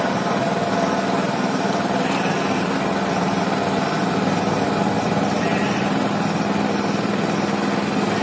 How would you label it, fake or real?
real